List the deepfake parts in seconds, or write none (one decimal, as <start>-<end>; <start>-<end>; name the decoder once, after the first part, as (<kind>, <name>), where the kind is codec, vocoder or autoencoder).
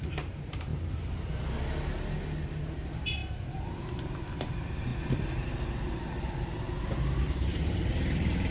0.0-0.7 (vocoder, BigVGAN v2); 2.6-3.2; 3.7-4.9; 6.4-8.5